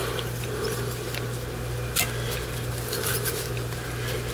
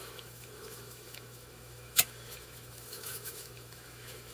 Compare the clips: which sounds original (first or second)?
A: first